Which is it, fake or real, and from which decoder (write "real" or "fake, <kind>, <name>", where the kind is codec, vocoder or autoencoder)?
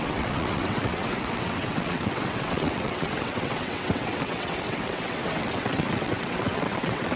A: fake, vocoder, WaveNeXt